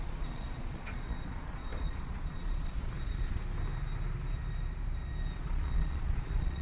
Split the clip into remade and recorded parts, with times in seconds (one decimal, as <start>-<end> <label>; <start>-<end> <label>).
0.0-3.4 remade; 3.4-5.4 recorded; 5.4-6.6 remade